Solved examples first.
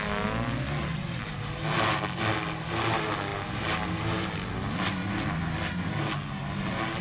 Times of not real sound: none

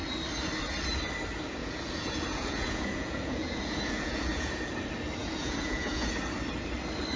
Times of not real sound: 1.6-4.6 (vocoder, Vocos); 5.2-6.1

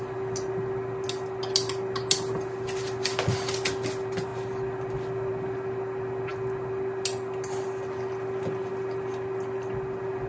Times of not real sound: none

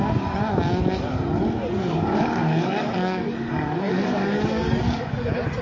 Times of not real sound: 1.7-5.1 (codec, DAC)

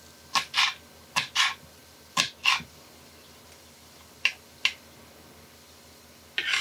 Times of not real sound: 0.0-6.6 (vocoder, BigVGAN v2)

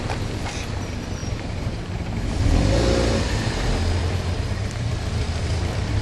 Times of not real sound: 0.0-6.0 (vocoder, BigVGAN v2)